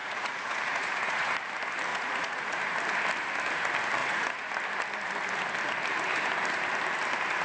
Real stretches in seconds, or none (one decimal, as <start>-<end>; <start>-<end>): 1.4-1.9; 2.6-4.0; 4.5-7.4